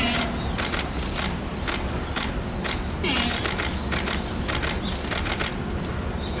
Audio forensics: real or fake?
real